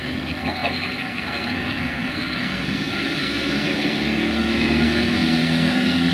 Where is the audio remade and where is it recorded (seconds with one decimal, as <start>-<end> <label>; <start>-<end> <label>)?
0.0-6.1 remade

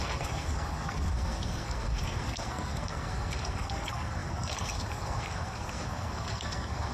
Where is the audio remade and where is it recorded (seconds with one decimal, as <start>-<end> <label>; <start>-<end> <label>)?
0.0-6.9 remade